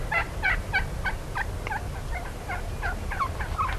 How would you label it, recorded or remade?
recorded